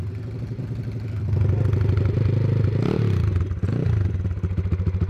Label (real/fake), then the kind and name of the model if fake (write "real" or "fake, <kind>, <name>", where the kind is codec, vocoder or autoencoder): real